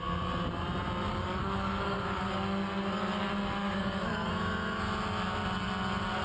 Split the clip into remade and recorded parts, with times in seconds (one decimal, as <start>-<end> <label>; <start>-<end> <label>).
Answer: 0.0-1.1 recorded; 1.1-2.2 remade; 2.2-3.6 recorded; 3.6-4.3 remade; 4.3-6.2 recorded